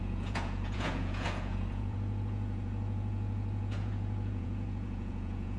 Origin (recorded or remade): remade